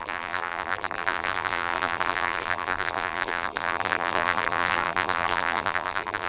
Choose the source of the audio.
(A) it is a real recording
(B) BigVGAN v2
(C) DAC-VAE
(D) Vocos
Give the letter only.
B